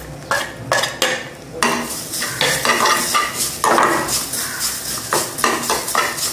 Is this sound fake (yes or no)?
no